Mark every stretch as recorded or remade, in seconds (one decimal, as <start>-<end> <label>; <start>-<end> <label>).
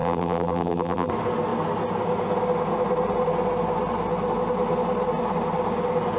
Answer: 0.0-1.1 remade; 1.1-6.2 recorded